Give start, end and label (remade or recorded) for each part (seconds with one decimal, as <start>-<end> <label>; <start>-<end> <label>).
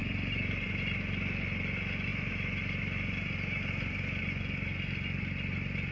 0.0-0.7 remade; 0.7-2.1 recorded; 2.1-4.2 remade; 4.2-5.9 recorded